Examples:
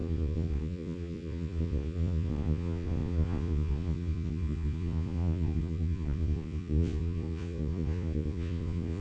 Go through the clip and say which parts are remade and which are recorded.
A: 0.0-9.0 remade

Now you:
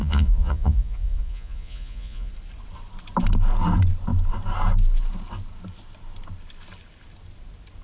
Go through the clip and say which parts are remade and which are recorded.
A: 0.0-2.3 remade; 2.3-7.8 recorded

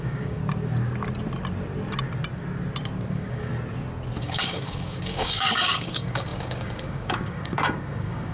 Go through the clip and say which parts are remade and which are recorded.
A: 0.0-0.4 remade; 0.4-3.1 recorded; 3.1-3.5 remade; 3.5-4.2 recorded; 4.2-8.3 remade

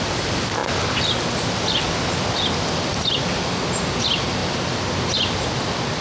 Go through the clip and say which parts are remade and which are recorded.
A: 0.0-2.9 recorded; 2.9-3.6 remade; 3.6-6.0 recorded